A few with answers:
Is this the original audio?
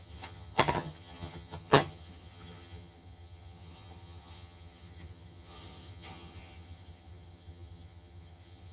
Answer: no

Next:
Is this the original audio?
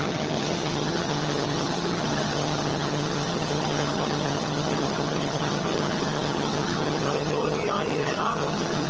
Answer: no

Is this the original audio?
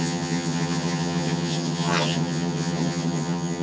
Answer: no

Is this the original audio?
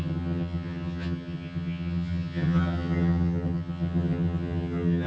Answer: no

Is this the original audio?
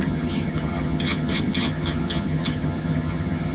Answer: no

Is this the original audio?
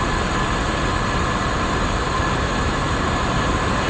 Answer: yes